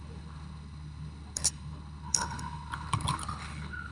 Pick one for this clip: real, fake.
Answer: fake